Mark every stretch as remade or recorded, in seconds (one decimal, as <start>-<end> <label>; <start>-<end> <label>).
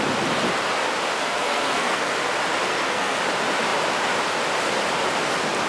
0.0-1.2 recorded; 1.2-2.1 remade; 2.1-2.7 recorded; 2.7-3.2 remade; 3.2-5.7 recorded